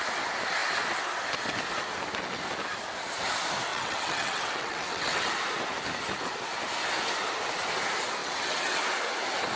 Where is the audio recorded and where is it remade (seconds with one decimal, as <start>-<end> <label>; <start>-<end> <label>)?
0.0-3.7 recorded; 3.7-5.3 remade; 5.3-8.2 recorded; 8.2-8.8 remade; 8.8-9.6 recorded

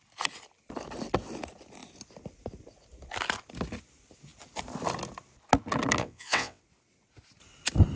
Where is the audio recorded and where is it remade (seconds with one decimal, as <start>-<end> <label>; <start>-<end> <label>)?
0.0-6.0 recorded; 6.0-6.6 remade; 6.6-8.0 recorded

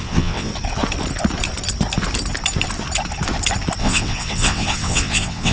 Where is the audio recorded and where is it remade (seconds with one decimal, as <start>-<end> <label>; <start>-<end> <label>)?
0.0-0.5 remade; 0.5-3.8 recorded; 3.8-5.5 remade

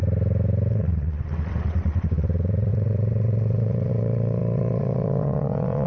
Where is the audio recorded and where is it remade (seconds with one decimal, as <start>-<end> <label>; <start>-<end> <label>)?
0.0-0.7 recorded; 0.7-5.9 remade

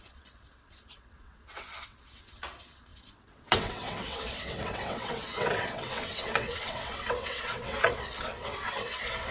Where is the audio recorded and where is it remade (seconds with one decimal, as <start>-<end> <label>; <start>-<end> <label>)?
0.0-9.3 remade